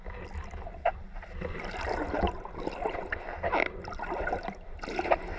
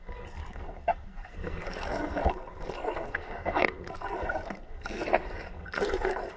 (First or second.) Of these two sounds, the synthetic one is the second